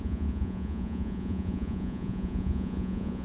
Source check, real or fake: fake